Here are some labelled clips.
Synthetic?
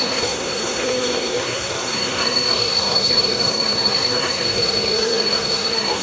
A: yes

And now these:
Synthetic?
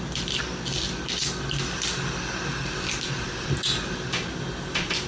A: no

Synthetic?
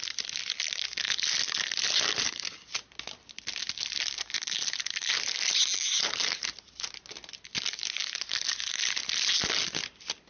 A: no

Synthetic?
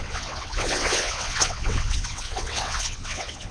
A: yes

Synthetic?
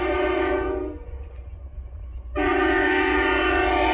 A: yes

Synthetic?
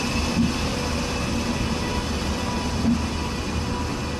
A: no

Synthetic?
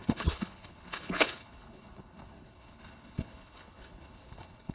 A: yes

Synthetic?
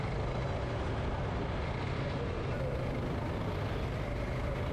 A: no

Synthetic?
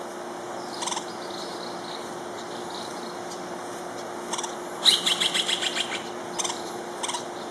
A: no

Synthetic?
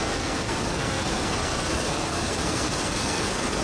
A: yes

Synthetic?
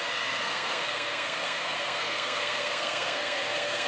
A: yes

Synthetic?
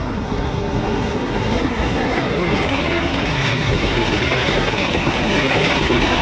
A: yes